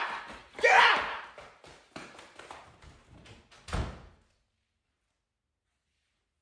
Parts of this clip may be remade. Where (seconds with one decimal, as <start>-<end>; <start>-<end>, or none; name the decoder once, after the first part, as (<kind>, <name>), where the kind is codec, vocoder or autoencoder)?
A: 0.4-2.2 (vocoder, BigVGAN v2)